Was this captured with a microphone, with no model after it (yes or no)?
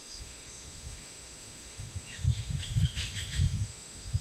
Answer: no